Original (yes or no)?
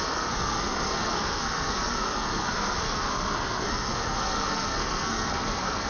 no